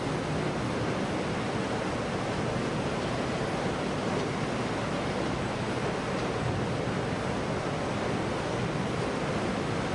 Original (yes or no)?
yes